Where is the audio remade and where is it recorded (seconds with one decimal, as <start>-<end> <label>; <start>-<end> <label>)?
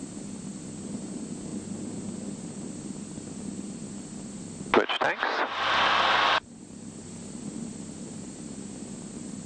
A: 0.0-9.5 recorded